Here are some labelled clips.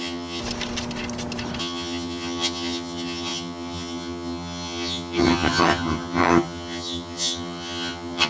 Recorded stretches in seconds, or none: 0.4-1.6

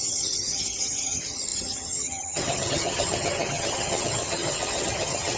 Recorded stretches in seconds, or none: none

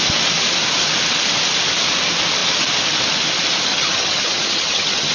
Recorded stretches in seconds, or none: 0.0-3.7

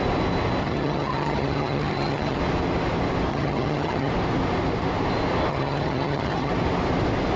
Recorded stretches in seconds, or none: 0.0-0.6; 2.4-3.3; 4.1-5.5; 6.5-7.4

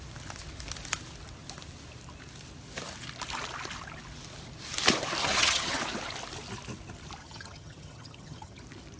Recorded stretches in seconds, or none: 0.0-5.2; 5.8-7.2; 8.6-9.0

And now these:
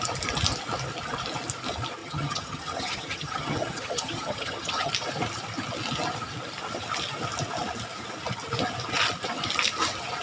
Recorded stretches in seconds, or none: 0.0-2.0; 4.9-10.2

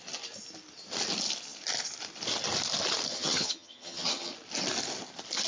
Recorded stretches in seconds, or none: 0.0-3.1; 4.3-5.5